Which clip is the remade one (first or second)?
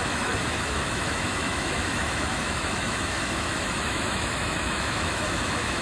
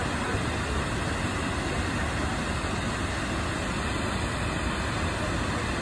first